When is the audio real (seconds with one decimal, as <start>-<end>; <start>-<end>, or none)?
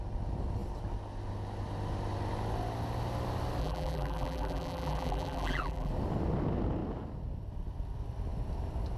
0.0-3.6; 5.9-9.0